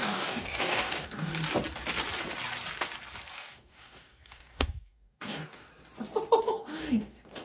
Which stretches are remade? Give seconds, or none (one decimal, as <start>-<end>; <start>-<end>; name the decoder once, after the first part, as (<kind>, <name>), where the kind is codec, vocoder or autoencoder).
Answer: 0.0-1.3 (codec, DAC); 3.3-5.7; 6.4-7.4